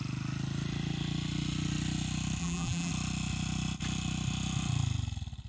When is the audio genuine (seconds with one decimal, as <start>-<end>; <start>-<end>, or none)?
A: 0.0-2.4; 2.9-5.5